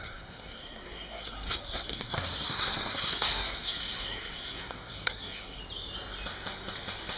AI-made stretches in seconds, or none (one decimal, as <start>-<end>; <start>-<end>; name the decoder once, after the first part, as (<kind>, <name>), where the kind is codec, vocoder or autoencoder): 0.0-5.6 (codec, SNAC)

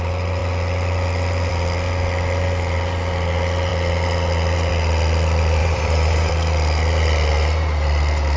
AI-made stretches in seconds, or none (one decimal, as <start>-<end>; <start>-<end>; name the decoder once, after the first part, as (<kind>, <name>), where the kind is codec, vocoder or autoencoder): 5.6-6.3 (vocoder, BigVGAN v2)

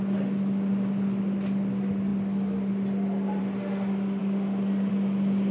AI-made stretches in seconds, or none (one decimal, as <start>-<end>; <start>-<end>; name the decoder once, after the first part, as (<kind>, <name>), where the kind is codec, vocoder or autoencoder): none